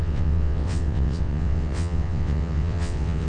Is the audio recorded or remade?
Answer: remade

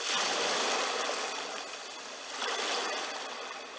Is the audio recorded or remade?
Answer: recorded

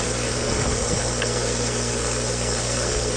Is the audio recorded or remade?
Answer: remade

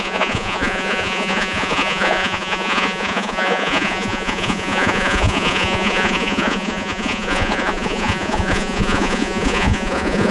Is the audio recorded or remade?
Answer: remade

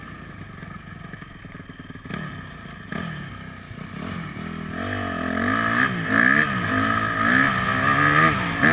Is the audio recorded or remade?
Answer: recorded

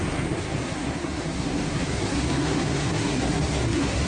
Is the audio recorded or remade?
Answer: remade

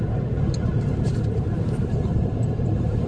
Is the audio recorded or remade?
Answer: remade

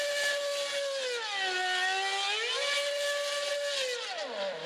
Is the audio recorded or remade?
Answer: recorded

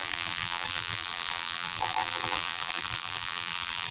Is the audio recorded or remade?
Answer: remade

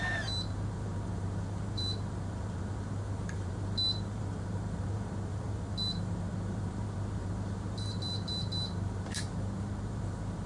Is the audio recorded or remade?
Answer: remade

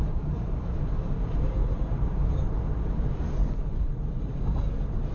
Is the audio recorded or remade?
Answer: remade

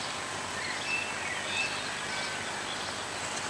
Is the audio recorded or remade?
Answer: recorded